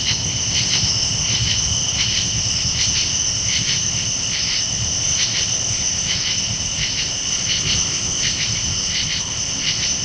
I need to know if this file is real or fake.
fake